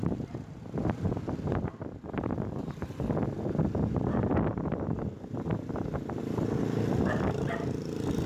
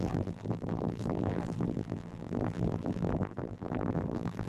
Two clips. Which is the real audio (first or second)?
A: first